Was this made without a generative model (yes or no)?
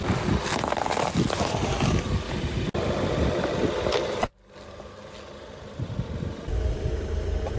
yes